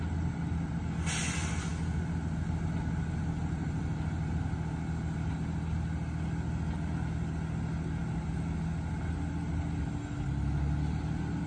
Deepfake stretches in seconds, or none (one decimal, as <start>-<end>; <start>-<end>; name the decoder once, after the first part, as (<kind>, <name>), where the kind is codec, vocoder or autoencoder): none